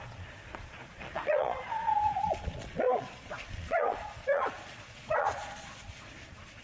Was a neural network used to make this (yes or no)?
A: yes